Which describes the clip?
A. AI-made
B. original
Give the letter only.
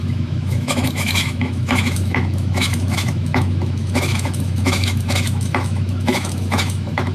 A